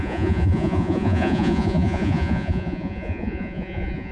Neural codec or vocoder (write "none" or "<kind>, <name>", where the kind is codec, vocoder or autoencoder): vocoder, Vocos